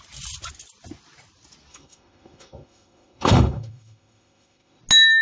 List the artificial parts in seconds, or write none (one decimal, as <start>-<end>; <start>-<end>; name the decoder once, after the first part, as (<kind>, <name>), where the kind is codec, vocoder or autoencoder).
1.7-4.8 (autoencoder, DAC-VAE)